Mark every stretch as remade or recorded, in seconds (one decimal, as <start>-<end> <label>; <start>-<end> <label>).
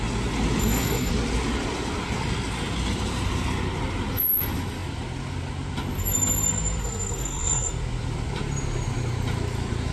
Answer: 0.0-0.6 recorded; 0.6-1.1 remade; 1.1-6.8 recorded; 6.8-7.7 remade; 7.7-9.9 recorded